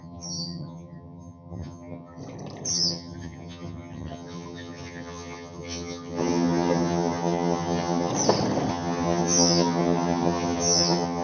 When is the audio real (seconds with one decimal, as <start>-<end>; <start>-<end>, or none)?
2.2-2.7; 8.1-8.7